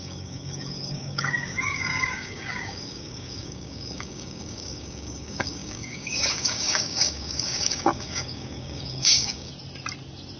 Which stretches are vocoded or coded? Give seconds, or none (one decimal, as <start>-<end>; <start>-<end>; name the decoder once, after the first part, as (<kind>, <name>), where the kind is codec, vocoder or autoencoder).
0.0-9.5 (codec, DAC)